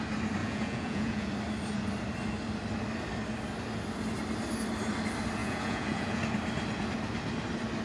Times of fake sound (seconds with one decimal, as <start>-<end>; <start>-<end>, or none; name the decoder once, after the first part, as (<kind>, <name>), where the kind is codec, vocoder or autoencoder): 0.4-1.3 (vocoder, Vocos); 5.4-6.2